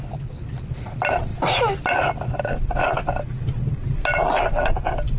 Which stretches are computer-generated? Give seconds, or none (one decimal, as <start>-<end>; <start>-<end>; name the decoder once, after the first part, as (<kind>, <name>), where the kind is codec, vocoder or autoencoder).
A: none